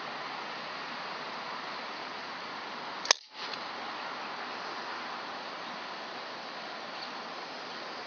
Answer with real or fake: real